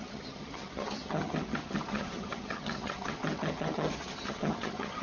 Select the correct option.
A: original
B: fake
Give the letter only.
B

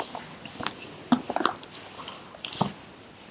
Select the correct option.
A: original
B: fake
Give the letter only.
A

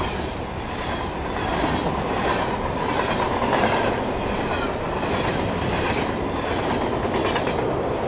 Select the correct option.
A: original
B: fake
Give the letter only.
A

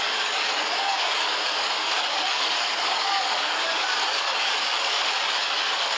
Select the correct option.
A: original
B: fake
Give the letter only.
B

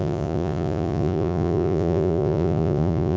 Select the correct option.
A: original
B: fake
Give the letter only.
B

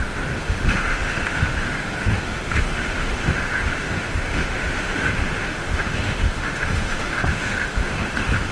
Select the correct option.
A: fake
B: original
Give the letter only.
A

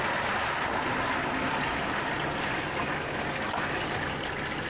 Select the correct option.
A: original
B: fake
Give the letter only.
A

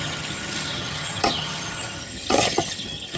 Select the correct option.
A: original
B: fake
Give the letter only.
B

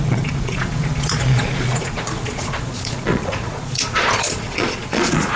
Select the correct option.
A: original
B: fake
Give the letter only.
B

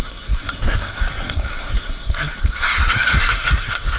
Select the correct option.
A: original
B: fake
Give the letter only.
B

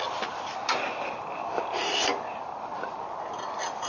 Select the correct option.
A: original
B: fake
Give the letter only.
A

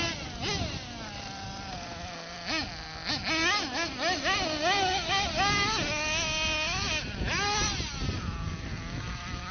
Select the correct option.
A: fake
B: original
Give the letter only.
B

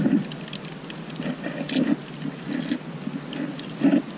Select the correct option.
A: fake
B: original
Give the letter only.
B